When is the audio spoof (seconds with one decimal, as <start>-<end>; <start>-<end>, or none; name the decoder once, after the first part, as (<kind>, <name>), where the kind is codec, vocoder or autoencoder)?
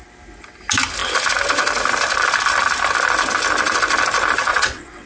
4.5-5.1 (vocoder, WaveNeXt)